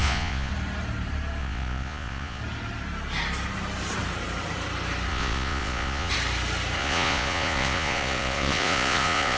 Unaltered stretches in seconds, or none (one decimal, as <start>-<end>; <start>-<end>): 0.5-1.4; 2.4-5.1; 6.1-6.8